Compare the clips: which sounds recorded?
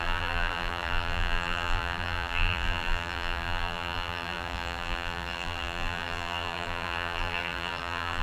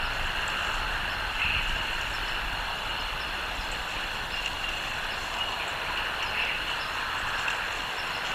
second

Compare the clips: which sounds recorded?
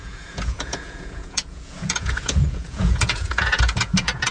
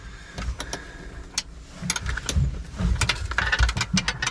second